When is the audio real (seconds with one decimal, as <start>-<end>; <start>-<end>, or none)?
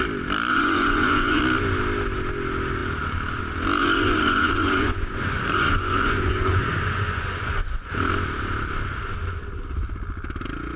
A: 0.0-0.5; 1.4-3.8; 7.9-10.8